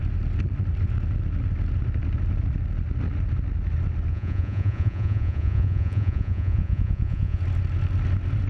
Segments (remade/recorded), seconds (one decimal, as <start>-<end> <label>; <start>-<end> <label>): 0.0-4.1 recorded; 4.1-7.4 remade; 7.4-8.5 recorded